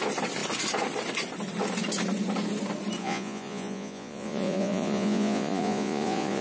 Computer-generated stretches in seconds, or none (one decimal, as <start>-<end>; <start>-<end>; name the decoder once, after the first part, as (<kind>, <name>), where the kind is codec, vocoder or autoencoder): 3.0-6.4 (vocoder, Vocos)